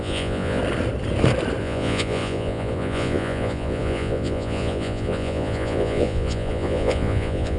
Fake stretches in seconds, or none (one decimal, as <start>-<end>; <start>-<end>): 0.0-0.6; 1.6-7.6